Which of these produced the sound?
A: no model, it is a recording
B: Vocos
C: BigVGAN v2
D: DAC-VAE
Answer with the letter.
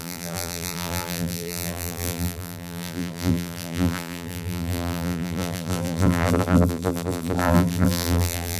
C